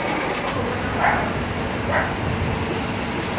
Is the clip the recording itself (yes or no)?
yes